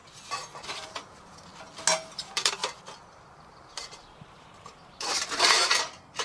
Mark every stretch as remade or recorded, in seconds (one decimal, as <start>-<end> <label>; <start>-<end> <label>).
0.0-0.7 recorded; 0.7-1.5 remade; 1.5-2.1 recorded; 2.1-2.6 remade; 2.6-3.3 recorded; 3.3-6.2 remade